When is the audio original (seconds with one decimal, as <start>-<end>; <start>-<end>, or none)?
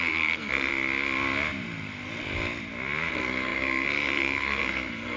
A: 0.7-3.1